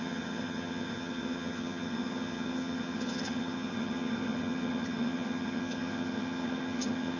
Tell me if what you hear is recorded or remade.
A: remade